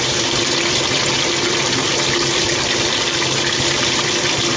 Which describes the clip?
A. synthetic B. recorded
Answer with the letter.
B